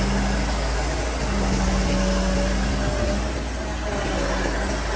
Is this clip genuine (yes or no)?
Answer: yes